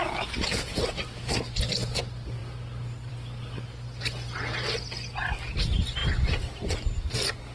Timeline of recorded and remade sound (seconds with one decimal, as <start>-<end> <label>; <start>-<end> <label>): 0.0-7.5 recorded